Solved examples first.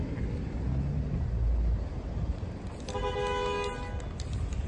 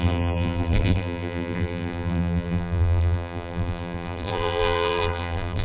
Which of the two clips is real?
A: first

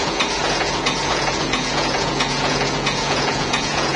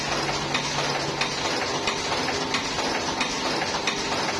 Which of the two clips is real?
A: second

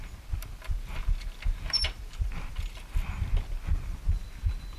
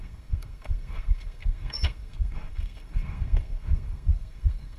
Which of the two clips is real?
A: first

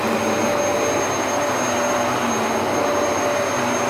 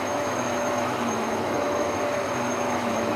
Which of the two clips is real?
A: first